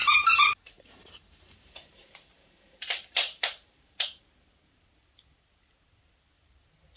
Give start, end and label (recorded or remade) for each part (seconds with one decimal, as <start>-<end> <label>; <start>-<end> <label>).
0.0-4.2 remade; 4.2-7.0 recorded